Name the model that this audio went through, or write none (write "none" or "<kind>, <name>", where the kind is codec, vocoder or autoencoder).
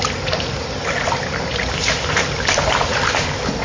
none